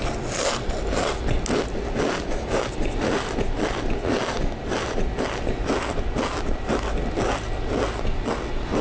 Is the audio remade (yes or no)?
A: no